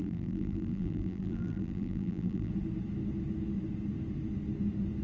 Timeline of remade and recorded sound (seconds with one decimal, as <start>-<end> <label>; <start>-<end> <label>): 0.0-2.5 remade; 2.5-5.0 recorded